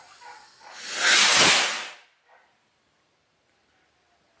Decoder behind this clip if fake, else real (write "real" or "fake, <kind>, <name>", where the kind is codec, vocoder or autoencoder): real